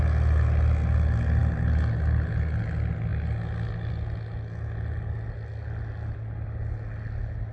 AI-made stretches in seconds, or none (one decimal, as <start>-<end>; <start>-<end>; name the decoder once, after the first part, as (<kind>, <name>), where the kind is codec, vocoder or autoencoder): none